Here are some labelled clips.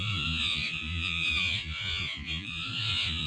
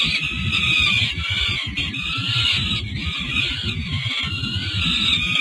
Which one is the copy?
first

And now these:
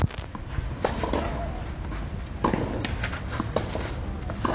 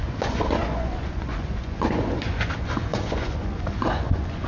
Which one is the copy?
second